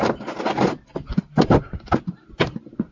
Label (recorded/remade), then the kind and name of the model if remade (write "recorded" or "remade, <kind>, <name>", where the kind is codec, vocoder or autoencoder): recorded